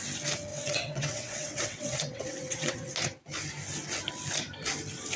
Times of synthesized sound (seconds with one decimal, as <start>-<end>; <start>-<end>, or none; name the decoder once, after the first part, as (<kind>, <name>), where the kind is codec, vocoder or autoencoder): 0.5-2.9 (vocoder, WaveNeXt)